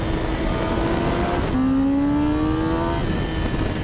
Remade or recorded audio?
recorded